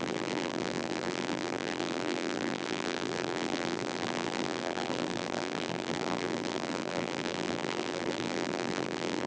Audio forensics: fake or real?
fake